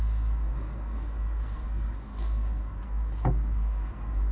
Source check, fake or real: fake